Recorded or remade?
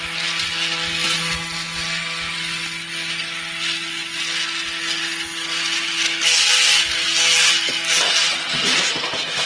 recorded